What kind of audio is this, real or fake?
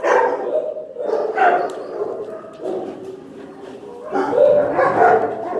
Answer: real